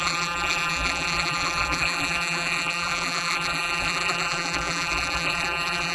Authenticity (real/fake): fake